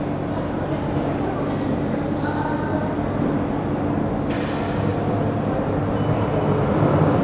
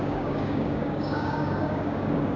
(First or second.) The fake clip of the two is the second